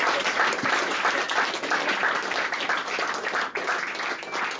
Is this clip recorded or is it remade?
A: recorded